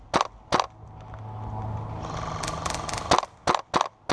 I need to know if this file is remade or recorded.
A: recorded